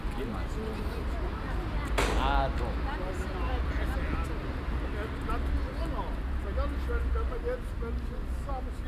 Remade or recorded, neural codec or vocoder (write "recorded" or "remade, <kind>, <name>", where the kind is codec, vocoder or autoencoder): recorded